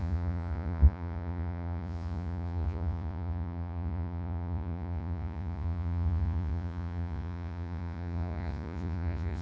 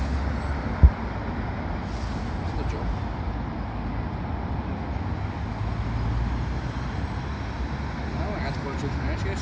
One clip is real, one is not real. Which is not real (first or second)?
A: first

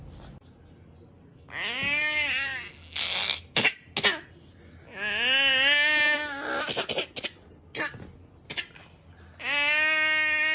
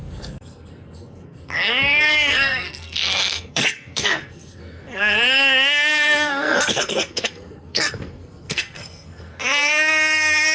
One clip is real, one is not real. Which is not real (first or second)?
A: second